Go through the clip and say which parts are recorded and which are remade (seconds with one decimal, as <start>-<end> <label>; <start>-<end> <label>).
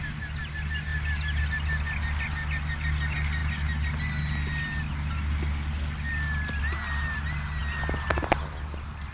0.0-9.1 recorded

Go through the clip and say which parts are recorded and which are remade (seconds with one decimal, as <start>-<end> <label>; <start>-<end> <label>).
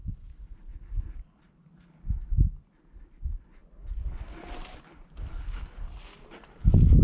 0.0-1.7 recorded; 1.7-7.0 remade